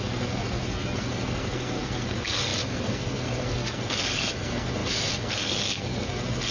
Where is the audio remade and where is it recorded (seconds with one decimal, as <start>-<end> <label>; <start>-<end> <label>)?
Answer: 0.0-6.5 remade